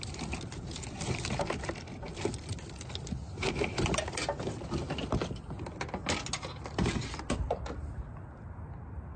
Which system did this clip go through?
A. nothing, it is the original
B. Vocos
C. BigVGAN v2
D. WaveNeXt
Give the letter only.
A